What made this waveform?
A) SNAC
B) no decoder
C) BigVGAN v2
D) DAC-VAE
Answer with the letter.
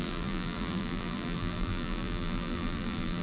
C